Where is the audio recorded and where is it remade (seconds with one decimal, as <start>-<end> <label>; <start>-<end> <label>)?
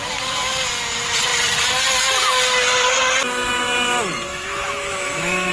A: 0.0-4.3 recorded; 4.3-5.5 remade